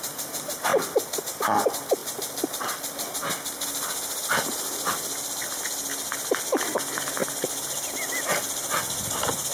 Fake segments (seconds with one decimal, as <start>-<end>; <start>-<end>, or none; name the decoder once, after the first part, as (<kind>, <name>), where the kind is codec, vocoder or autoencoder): none